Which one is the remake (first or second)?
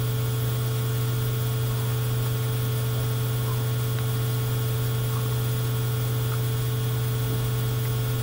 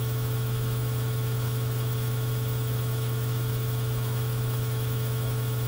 second